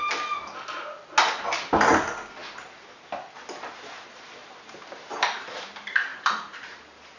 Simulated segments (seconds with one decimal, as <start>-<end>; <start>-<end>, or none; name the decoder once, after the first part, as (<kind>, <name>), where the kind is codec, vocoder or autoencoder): 4.4-4.9 (vocoder, BigVGAN v2); 6.1-7.2